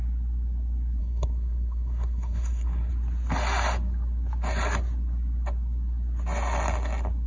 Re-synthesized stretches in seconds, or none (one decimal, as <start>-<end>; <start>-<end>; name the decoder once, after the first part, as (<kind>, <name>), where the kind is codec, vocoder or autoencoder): 1.0-2.9 (codec, SNAC)